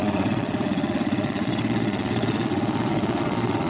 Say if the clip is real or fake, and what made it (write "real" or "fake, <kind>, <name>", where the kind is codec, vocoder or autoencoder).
fake, vocoder, Vocos